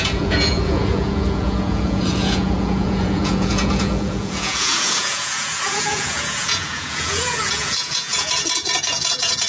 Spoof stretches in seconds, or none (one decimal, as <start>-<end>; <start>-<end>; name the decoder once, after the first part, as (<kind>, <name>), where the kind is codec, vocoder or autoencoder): 0.0-9.5 (vocoder, Vocos)